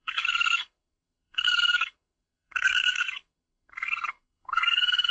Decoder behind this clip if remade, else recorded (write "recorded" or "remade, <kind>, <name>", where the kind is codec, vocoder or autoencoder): remade, codec, SNAC